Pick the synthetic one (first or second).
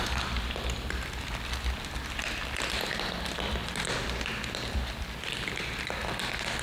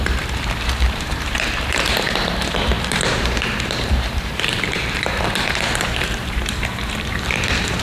second